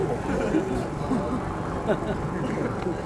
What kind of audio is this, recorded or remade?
recorded